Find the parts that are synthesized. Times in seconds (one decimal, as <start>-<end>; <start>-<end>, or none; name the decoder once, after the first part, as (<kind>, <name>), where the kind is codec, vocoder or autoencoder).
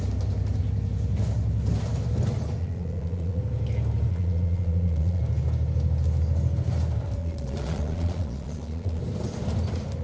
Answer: 2.6-3.4 (vocoder, Vocos); 4.1-5.2; 7.2-9.0